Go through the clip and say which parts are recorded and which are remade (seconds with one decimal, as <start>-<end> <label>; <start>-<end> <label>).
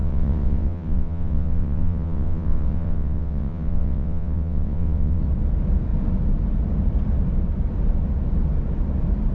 0.0-5.2 remade; 5.2-9.3 recorded